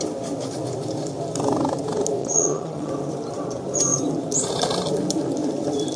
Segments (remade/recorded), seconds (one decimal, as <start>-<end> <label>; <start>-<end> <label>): 0.0-2.2 recorded; 2.2-2.9 remade; 2.9-6.0 recorded